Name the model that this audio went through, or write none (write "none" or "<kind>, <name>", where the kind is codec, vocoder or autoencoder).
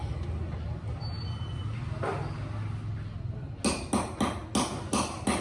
none